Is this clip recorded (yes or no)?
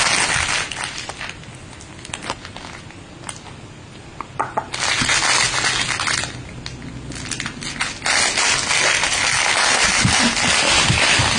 yes